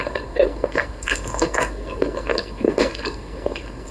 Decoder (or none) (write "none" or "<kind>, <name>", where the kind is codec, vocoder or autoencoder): codec, SNAC